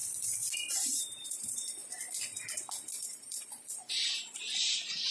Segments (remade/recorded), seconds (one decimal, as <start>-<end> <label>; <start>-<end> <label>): 0.0-0.7 recorded; 0.7-1.8 remade; 1.8-3.0 recorded; 3.0-5.1 remade